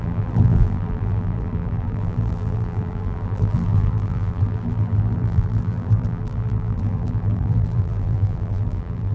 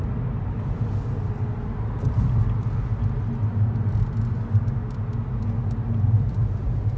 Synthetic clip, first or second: first